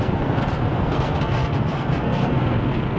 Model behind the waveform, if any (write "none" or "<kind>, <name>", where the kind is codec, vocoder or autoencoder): codec, SNAC